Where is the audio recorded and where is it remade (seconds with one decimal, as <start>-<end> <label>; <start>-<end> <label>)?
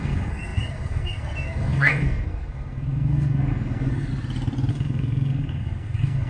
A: 0.0-4.1 remade; 4.1-4.7 recorded; 4.7-6.3 remade